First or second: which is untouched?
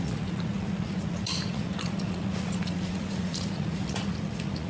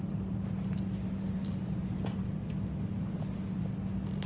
second